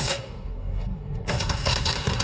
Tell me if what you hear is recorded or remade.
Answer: remade